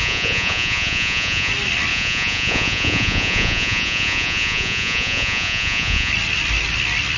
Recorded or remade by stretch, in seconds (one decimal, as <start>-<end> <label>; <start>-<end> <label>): 0.0-1.5 remade; 1.5-1.9 recorded; 1.9-6.1 remade; 6.1-7.2 recorded